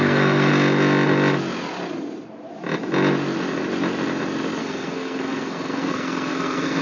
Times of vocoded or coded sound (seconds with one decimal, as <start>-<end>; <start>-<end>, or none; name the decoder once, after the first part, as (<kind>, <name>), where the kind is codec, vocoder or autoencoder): 0.0-0.5 (codec, SNAC); 4.6-6.8